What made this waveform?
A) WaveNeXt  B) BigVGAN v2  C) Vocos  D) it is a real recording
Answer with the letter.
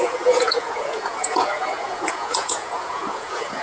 C